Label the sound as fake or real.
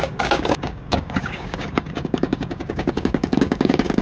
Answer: fake